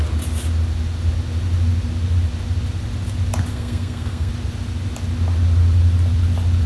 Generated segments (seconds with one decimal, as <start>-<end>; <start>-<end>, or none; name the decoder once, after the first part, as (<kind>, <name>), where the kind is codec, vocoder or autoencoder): 3.5-4.3 (codec, SNAC)